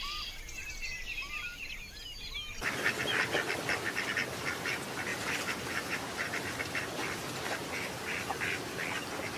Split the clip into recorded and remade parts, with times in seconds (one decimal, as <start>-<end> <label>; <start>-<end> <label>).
0.0-5.1 recorded; 5.1-6.6 remade; 6.6-9.4 recorded